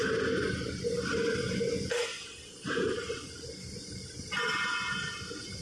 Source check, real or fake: real